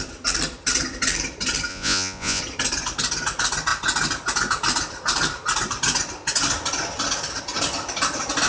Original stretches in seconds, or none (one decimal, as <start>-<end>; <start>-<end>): 0.0-1.7; 2.4-8.5